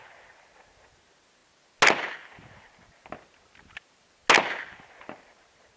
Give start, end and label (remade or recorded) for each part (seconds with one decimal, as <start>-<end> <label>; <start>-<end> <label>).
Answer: 0.0-5.8 recorded